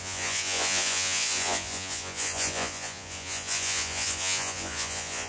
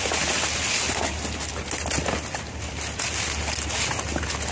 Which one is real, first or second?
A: second